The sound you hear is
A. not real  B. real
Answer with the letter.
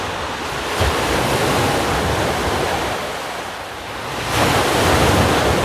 B